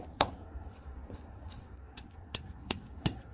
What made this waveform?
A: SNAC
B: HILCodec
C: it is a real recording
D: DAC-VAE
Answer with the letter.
A